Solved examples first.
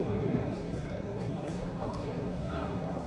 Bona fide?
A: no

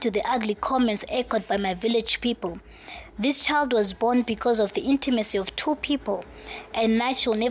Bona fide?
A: yes